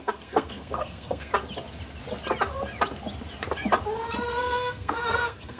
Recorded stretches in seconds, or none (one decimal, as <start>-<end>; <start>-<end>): 1.3-4.4

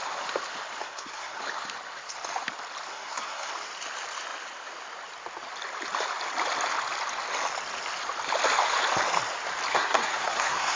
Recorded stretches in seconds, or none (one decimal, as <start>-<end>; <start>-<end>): 0.0-0.8; 1.4-2.9; 3.5-9.7

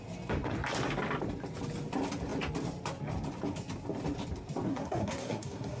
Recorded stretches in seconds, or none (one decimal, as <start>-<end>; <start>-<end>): 0.0-4.7

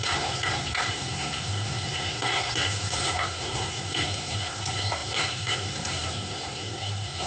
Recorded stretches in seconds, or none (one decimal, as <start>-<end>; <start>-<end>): none

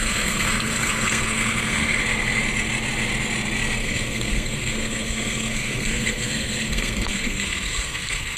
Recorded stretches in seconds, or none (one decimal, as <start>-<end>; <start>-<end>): 2.0-3.8